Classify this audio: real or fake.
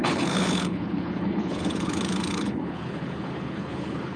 fake